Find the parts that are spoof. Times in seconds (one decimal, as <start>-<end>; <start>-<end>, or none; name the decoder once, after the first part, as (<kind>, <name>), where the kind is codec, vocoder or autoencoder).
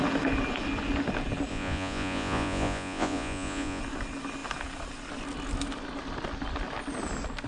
1.5-3.8 (vocoder, Vocos)